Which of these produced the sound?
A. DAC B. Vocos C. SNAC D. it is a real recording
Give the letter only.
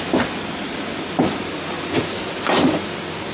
D